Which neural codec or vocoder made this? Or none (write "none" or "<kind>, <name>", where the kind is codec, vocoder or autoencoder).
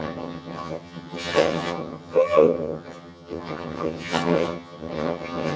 vocoder, HiFi-GAN